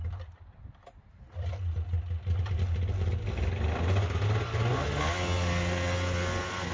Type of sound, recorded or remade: recorded